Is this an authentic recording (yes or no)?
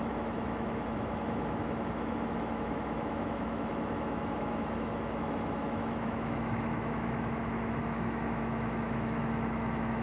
no